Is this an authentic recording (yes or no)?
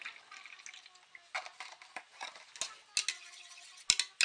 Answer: yes